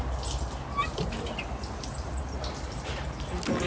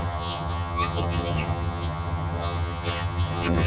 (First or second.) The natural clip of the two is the first